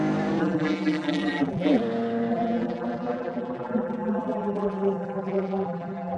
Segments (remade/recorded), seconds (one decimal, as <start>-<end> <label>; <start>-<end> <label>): 0.0-0.4 recorded; 0.4-1.8 remade; 1.8-2.3 recorded; 2.3-6.2 remade